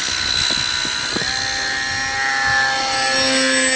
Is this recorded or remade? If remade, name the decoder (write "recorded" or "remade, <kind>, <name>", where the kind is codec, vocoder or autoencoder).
recorded